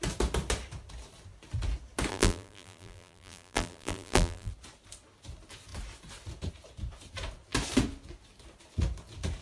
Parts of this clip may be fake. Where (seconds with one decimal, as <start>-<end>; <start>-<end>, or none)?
2.1-4.5

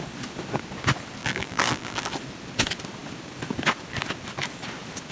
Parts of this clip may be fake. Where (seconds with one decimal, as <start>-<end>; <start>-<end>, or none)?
1.2-2.1

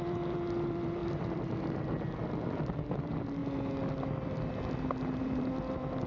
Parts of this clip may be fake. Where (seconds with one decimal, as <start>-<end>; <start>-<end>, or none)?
0.0-3.4; 5.2-6.1

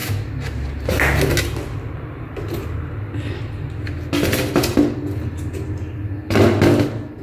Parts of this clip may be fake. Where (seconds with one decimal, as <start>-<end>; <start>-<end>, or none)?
none